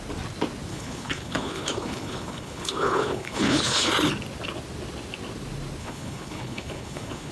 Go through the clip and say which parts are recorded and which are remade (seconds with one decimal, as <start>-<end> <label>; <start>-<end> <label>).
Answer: 0.0-0.7 recorded; 0.7-3.9 remade; 3.9-5.8 recorded; 5.8-7.3 remade